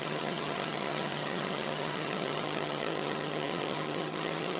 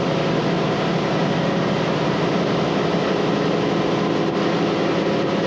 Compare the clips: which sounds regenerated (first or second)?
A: first